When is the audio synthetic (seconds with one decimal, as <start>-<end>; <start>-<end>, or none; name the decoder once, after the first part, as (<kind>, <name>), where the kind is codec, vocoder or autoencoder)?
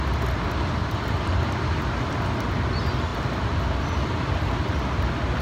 0.8-1.6 (vocoder, BigVGAN v2)